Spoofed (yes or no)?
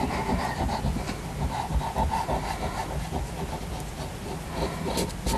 no